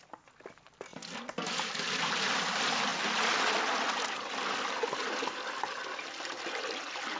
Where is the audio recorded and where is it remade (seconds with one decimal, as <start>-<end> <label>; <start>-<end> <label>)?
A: 0.0-0.9 recorded; 0.9-2.1 remade; 2.1-7.2 recorded